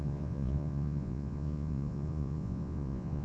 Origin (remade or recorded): remade